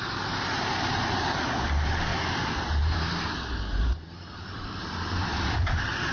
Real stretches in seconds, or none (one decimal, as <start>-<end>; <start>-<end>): 0.5-1.2